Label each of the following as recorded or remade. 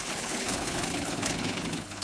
remade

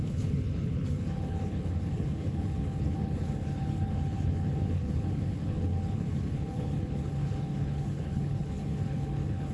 remade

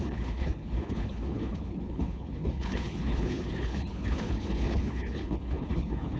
remade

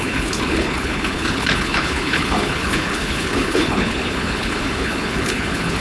remade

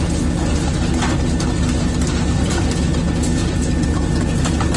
recorded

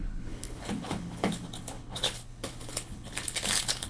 remade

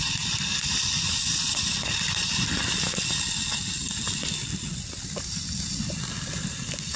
recorded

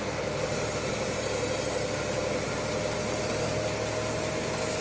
recorded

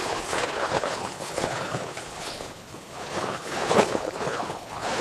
remade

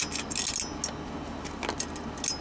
recorded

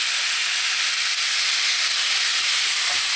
recorded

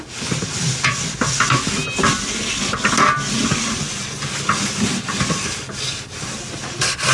recorded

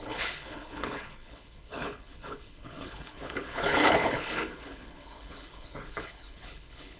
remade